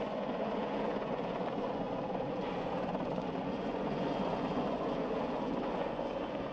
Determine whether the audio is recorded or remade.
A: remade